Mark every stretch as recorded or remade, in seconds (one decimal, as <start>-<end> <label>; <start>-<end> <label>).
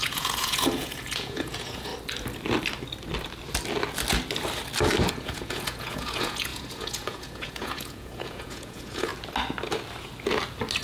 0.0-1.9 remade; 1.9-5.1 recorded; 5.1-9.1 remade; 9.1-10.8 recorded